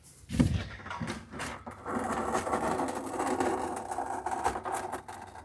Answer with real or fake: real